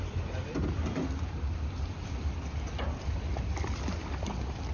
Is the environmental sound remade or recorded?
remade